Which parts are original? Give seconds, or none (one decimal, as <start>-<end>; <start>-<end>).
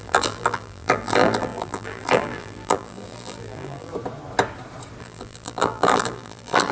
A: 3.9-5.0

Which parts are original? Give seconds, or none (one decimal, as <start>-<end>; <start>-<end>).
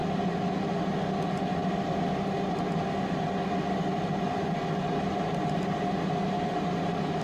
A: 0.0-7.2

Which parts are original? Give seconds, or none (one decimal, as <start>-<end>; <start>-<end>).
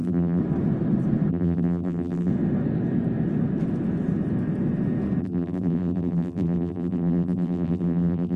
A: 0.4-1.3; 2.3-5.2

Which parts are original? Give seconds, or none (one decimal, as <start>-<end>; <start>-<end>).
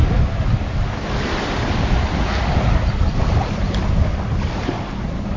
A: 0.0-5.4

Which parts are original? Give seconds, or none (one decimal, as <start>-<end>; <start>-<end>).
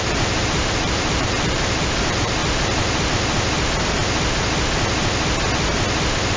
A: 2.4-6.4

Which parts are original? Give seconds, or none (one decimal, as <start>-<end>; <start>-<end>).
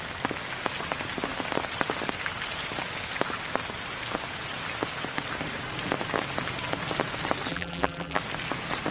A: 0.0-7.5; 8.2-8.9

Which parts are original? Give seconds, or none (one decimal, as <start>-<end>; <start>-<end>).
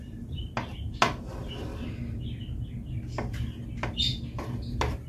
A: 0.4-1.2; 1.7-5.1